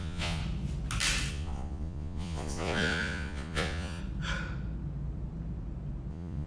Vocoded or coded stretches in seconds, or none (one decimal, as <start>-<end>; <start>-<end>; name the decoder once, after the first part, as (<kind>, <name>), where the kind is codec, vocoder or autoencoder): 0.0-0.4 (vocoder, Vocos); 1.3-4.0; 6.1-6.5